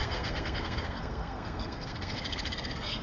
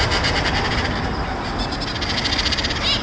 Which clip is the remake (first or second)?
first